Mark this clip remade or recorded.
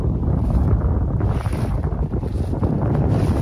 recorded